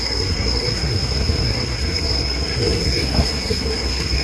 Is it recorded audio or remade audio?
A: remade